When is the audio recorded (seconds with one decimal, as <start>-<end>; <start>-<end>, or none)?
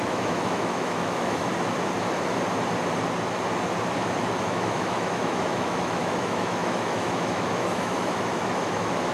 1.5-4.4